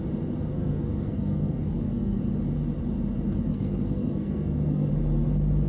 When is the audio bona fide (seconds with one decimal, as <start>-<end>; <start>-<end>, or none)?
0.0-0.5; 2.2-3.5; 4.9-5.7